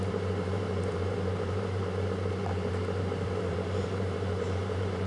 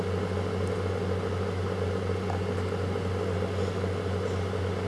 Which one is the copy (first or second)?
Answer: first